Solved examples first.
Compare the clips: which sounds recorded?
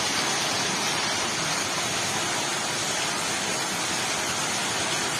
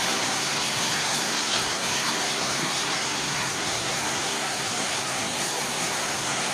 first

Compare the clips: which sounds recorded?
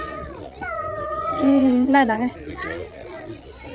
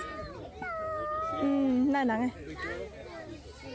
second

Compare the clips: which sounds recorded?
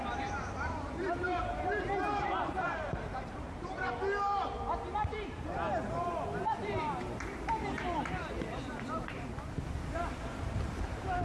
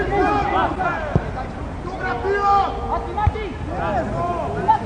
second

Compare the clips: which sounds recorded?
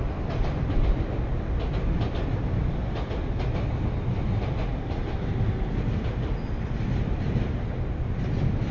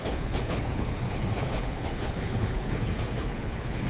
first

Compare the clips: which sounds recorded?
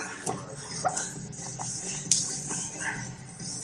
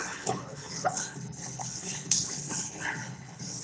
first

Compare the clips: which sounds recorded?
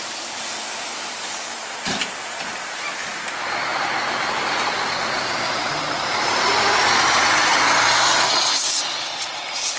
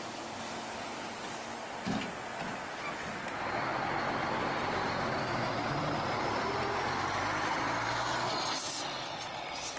second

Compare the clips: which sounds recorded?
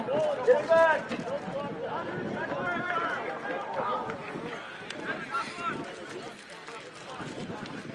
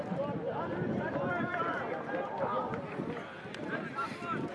first